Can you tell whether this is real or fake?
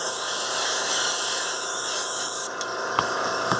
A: fake